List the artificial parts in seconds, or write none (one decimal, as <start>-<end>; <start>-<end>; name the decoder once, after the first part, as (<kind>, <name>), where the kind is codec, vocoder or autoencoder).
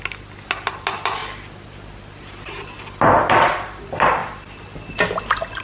none